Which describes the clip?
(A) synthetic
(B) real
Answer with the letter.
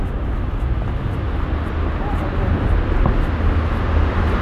B